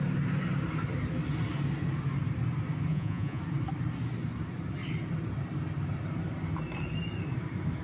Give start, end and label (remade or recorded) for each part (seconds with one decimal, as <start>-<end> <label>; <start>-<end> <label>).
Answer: 0.0-2.9 recorded; 2.9-3.4 remade; 3.4-7.8 recorded